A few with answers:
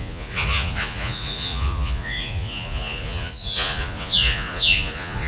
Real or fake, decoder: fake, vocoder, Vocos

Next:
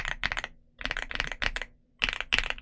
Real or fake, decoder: real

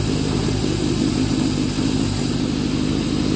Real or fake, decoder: real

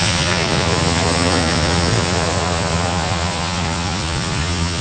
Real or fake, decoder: fake, vocoder, Vocos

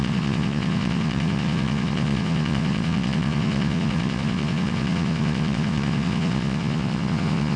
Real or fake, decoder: fake, vocoder, Vocos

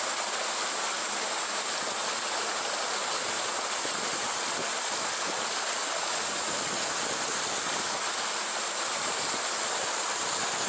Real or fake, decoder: real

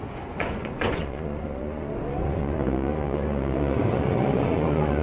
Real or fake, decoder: fake, vocoder, Vocos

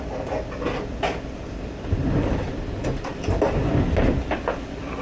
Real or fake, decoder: real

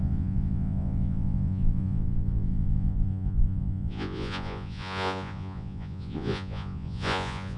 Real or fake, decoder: fake, vocoder, Vocos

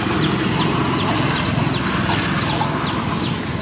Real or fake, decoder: real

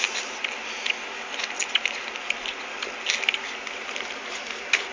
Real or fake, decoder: real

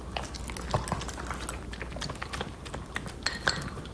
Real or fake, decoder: real